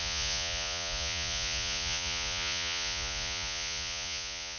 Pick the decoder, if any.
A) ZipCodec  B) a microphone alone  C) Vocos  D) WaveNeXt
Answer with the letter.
C